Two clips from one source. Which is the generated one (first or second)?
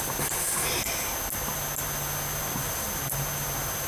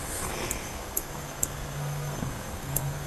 second